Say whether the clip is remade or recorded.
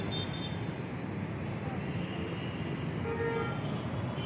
recorded